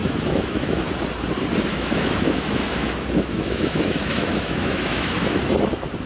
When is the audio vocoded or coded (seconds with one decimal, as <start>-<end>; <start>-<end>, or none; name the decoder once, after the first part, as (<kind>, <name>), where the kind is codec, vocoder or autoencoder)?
0.0-0.8 (autoencoder, DAC-VAE); 1.7-5.4